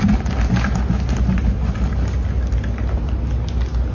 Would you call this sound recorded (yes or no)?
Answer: yes